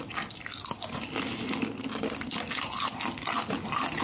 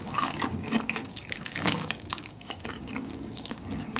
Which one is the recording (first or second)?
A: first